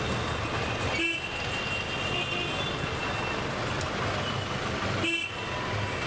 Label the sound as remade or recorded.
recorded